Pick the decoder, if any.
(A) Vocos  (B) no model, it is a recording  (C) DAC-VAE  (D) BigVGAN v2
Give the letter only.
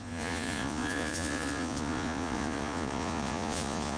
A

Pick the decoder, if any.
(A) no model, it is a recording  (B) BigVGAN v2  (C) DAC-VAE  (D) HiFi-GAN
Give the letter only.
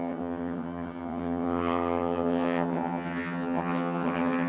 D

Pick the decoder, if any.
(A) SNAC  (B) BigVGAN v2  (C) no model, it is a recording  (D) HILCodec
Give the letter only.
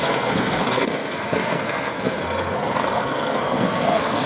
A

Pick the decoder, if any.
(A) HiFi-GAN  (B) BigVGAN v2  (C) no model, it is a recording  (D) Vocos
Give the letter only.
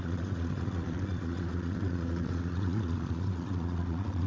D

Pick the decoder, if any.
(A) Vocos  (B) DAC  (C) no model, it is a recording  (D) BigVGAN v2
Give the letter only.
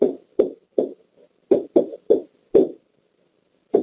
D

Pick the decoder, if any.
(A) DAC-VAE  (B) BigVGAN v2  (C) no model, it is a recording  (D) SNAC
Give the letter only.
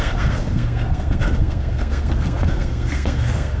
D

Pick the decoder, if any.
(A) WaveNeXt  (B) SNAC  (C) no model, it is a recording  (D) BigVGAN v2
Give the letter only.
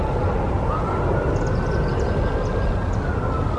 C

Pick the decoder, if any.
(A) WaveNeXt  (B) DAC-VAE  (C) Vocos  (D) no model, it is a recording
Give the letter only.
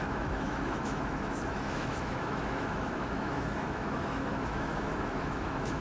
B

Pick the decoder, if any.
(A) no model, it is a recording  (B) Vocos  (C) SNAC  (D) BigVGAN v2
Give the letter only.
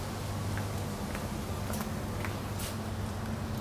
A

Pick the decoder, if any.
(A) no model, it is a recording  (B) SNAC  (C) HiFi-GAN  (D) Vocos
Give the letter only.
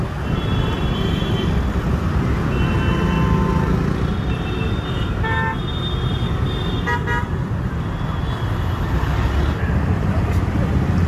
A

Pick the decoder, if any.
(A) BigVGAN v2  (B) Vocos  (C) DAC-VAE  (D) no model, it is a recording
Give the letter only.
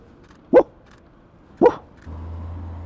D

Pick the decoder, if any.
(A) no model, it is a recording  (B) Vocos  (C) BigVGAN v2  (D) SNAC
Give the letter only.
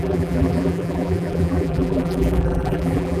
C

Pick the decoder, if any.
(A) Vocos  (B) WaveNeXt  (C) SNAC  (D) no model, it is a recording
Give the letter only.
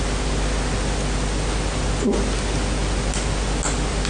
D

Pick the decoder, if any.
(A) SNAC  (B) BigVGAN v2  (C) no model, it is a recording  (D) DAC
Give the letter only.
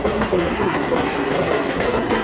A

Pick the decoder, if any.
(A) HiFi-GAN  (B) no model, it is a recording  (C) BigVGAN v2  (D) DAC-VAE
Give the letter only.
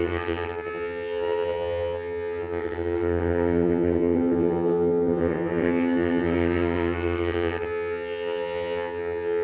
A